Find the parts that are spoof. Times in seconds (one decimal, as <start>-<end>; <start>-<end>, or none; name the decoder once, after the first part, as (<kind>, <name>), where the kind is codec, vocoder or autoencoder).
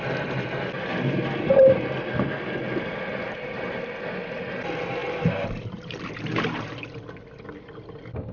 none